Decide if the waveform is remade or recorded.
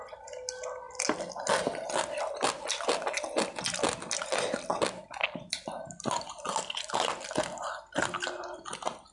recorded